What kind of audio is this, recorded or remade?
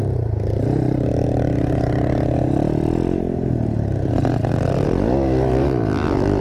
recorded